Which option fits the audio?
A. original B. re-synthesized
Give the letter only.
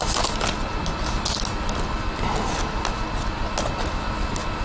A